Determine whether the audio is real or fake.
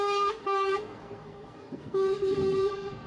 fake